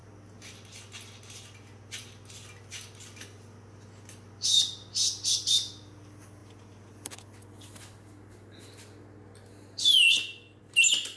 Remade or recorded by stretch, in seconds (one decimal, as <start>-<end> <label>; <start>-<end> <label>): 0.0-11.2 recorded